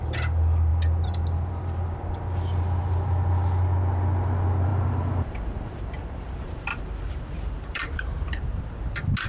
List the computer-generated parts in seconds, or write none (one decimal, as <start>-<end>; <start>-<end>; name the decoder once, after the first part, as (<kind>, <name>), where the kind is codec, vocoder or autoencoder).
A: 4.7-8.6 (vocoder, BigVGAN v2)